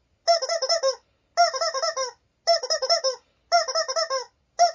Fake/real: real